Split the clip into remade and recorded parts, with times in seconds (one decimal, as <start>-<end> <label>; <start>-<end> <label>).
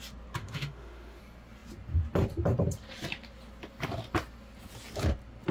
0.0-0.4 recorded; 0.4-1.2 remade; 1.2-5.5 recorded